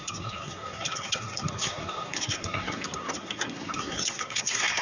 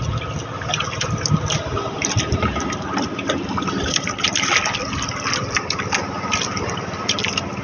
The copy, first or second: first